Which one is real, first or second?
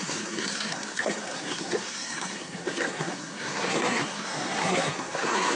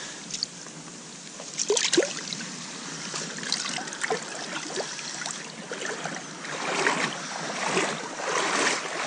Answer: second